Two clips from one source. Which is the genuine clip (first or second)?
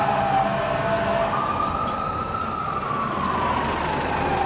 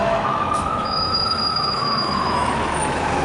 first